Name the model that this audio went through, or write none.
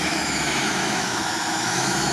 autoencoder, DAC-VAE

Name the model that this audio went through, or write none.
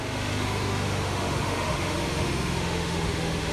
autoencoder, DAC-VAE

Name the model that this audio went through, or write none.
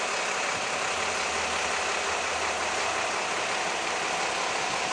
none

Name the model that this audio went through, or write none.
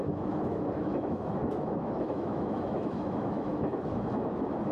autoencoder, DAC-VAE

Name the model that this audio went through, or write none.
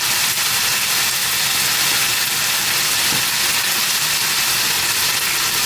none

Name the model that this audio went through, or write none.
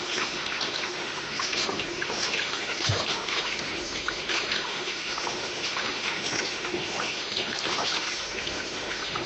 autoencoder, DAC-VAE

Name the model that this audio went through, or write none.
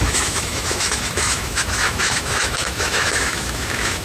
autoencoder, DAC-VAE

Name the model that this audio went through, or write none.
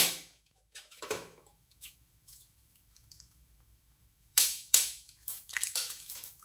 autoencoder, DAC-VAE